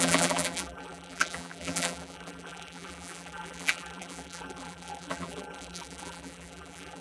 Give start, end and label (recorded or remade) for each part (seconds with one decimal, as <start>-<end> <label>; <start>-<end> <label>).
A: 0.0-7.0 remade

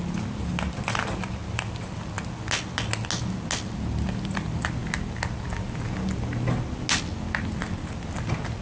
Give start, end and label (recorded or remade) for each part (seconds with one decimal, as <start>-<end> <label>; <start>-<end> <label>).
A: 0.0-8.6 recorded

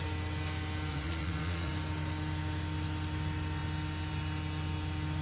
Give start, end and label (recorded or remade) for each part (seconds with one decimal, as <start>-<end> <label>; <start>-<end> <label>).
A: 0.0-0.9 recorded; 0.9-1.7 remade; 1.7-5.2 recorded

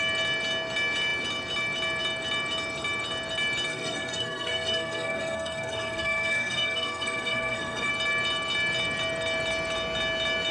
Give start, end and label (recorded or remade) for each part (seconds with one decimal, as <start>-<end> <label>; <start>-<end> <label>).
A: 0.0-3.7 recorded; 3.7-7.9 remade; 7.9-10.5 recorded

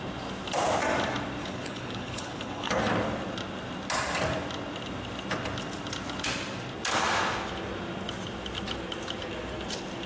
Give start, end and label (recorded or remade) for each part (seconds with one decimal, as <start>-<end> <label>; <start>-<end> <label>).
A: 0.0-1.4 recorded; 1.4-2.8 remade; 2.8-10.1 recorded